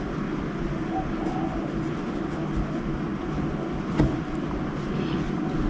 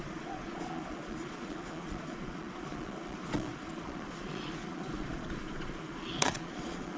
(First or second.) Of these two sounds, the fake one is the second